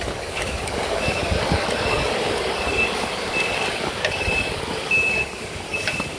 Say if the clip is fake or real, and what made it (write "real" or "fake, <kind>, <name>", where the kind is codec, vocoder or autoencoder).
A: fake, codec, DAC